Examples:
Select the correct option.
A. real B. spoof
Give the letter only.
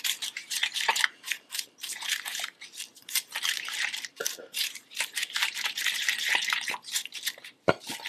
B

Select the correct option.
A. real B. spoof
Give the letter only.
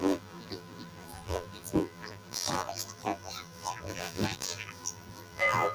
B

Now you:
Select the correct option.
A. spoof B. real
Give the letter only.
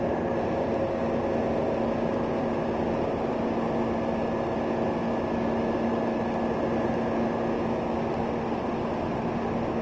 B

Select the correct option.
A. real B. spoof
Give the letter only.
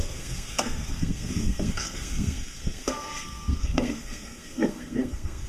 B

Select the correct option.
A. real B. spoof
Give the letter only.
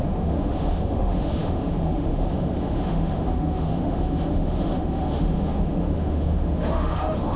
B